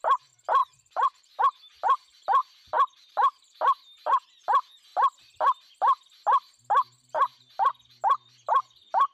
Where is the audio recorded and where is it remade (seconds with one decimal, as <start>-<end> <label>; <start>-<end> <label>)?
0.0-0.6 recorded; 0.6-1.4 remade; 1.4-9.1 recorded